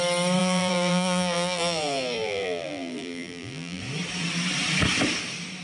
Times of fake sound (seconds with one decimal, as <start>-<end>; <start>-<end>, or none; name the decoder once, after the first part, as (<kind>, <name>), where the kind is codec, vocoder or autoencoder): 0.4-3.8 (vocoder, BigVGAN v2)